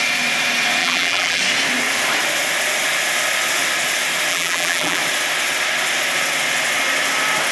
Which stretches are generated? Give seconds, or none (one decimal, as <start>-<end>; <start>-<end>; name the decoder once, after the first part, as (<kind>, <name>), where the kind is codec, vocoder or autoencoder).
0.8-1.4 (vocoder, BigVGAN v2); 4.3-5.0

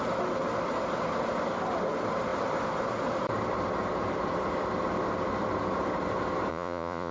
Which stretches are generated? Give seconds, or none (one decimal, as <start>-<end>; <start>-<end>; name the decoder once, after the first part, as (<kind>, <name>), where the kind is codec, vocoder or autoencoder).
6.5-7.1 (vocoder, Vocos)